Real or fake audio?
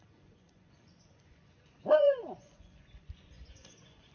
fake